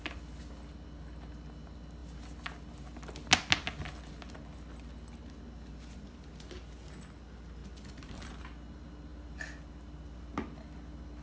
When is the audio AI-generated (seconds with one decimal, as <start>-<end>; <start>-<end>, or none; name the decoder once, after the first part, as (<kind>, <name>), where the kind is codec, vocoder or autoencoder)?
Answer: none